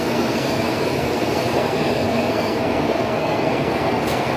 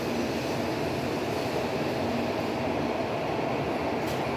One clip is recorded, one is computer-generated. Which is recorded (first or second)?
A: second